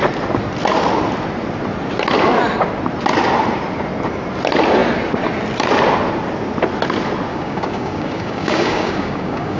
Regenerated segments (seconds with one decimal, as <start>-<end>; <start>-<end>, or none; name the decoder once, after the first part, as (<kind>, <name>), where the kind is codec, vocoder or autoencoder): 7.3-9.6 (codec, DAC)